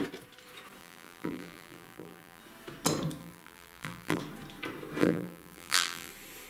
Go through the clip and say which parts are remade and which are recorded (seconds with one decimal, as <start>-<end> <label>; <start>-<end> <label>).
0.0-0.8 recorded; 0.8-2.4 remade; 2.4-3.2 recorded; 3.2-4.2 remade; 4.2-5.0 recorded; 5.0-6.1 remade; 6.1-6.5 recorded